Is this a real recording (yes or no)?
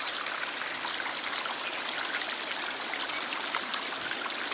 yes